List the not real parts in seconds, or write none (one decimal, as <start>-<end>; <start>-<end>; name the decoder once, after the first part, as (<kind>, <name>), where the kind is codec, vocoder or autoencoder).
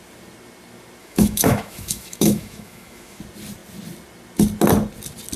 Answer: 1.0-3.2 (autoencoder, DAC-VAE)